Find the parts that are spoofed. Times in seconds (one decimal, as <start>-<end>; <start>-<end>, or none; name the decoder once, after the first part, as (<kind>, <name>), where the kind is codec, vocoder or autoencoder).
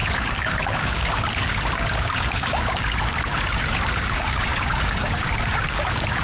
0.0-6.2 (codec, DAC)